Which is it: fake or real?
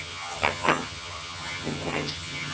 fake